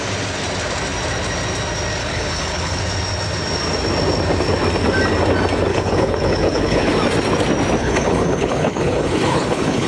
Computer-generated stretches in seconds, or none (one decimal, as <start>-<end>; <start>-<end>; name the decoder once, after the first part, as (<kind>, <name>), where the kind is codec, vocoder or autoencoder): 2.0-2.8 (codec, HILCodec); 5.7-6.9; 7.8-9.9